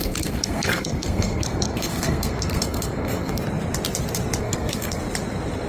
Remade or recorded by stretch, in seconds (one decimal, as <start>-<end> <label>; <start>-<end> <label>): 0.0-3.4 remade; 3.4-4.4 recorded; 4.4-5.0 remade; 5.0-5.7 recorded